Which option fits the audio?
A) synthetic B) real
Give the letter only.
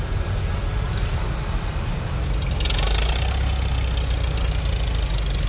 B